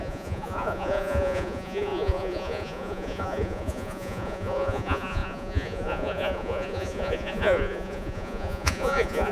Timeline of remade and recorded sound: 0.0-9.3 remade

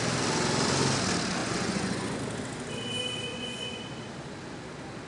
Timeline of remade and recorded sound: 0.0-1.4 recorded; 1.4-2.2 remade; 2.2-3.3 recorded; 3.3-3.8 remade; 3.8-5.1 recorded

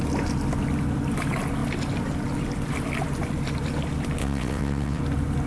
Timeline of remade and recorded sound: 0.0-4.2 recorded; 4.2-5.0 remade; 5.0-5.5 recorded

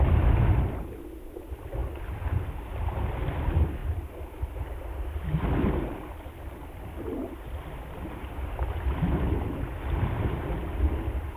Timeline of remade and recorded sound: 0.0-11.4 recorded

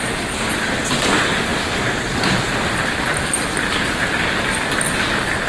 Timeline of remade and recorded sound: 0.0-5.5 recorded

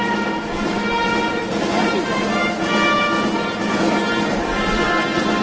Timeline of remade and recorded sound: 0.0-5.4 recorded